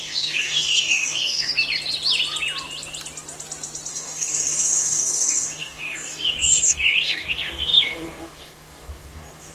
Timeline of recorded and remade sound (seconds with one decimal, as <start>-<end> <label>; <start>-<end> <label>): 0.0-1.5 remade; 1.5-3.9 recorded; 3.9-9.5 remade

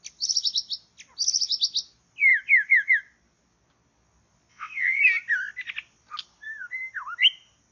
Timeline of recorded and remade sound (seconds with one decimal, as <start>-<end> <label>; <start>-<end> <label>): 0.0-4.5 recorded; 4.5-5.0 remade; 5.0-7.7 recorded

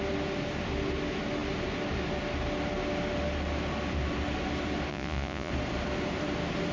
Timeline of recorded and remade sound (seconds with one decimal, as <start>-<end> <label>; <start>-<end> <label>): 0.0-4.9 recorded; 4.9-5.5 remade; 5.5-6.7 recorded

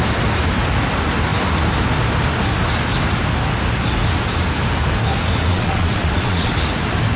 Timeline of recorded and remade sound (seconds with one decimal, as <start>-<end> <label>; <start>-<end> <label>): 0.0-5.5 recorded; 5.5-6.5 remade; 6.5-7.2 recorded

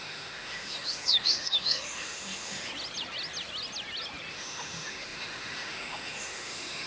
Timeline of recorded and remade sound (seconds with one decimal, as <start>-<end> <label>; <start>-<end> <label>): 0.0-2.7 remade; 2.7-4.3 recorded; 4.3-6.9 remade